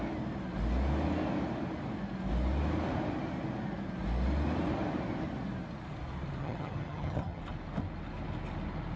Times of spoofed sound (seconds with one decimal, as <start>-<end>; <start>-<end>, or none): 6.4-7.4